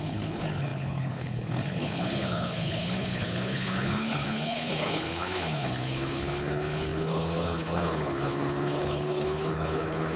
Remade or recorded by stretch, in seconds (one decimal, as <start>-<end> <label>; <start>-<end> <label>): 0.0-10.2 remade